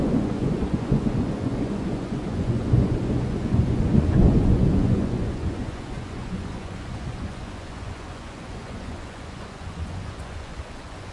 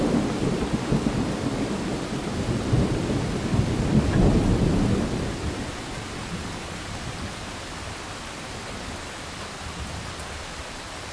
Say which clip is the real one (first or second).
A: second